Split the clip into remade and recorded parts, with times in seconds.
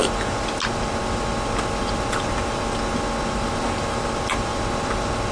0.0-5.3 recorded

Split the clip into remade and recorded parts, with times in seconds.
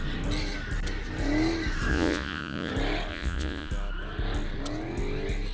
0.0-1.9 recorded; 1.9-2.7 remade; 2.7-3.1 recorded; 3.1-3.7 remade; 3.7-5.5 recorded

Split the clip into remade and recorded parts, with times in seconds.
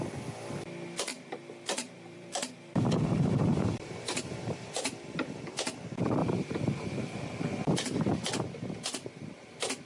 0.0-1.1 recorded; 1.1-5.4 remade; 5.4-6.2 recorded; 6.2-7.4 remade; 7.4-9.9 recorded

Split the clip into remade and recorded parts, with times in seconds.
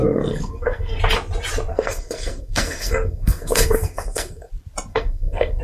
0.0-1.0 remade; 1.0-1.7 recorded; 1.7-4.5 remade; 4.5-4.9 recorded; 4.9-5.6 remade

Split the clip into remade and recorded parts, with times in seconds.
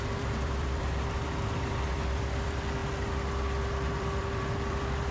0.0-2.8 remade; 2.8-3.7 recorded; 3.7-5.1 remade